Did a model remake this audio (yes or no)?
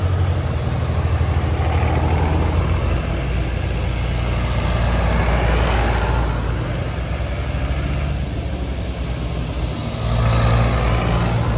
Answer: no